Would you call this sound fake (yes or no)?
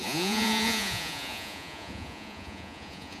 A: yes